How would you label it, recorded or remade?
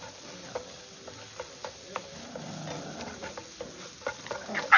recorded